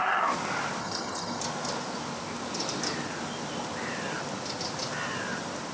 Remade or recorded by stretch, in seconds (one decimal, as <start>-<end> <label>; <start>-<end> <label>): 0.0-0.8 recorded; 0.8-1.4 remade; 1.4-5.7 recorded